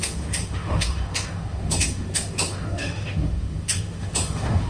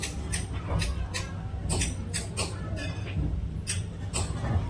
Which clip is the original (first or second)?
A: second